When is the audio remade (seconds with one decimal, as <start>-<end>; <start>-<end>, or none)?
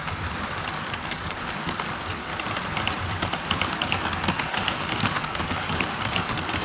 0.7-2.3; 3.7-6.6